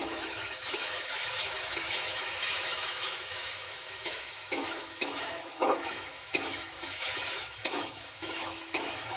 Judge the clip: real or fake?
fake